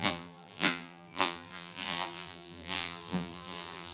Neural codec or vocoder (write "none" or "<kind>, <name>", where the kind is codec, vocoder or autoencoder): vocoder, BigVGAN v2